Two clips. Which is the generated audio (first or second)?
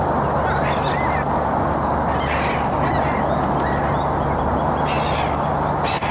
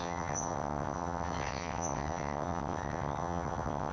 second